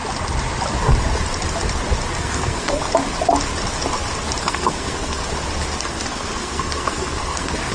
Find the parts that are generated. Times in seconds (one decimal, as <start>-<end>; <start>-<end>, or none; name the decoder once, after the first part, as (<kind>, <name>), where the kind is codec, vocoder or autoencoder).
2.2-2.9 (codec, SNAC); 4.4-5.2; 5.8-7.7